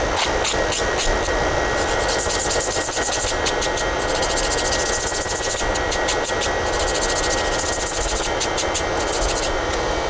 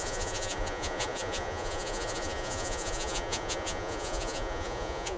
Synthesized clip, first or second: second